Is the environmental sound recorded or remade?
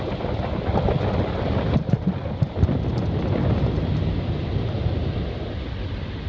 recorded